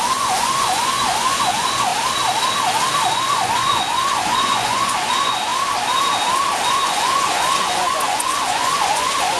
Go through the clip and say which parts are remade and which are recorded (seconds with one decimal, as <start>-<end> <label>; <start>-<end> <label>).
0.0-1.9 remade; 1.9-3.1 recorded; 3.1-5.5 remade; 5.5-6.7 recorded; 6.7-9.4 remade